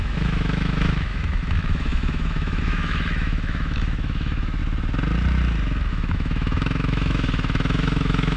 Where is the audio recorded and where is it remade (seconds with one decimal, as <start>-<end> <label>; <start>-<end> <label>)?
0.0-4.6 remade; 4.6-5.9 recorded; 5.9-8.4 remade

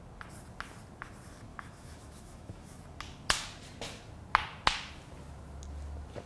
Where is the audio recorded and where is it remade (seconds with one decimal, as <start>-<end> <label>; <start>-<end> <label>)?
0.0-1.5 recorded; 1.5-2.8 remade; 2.8-6.3 recorded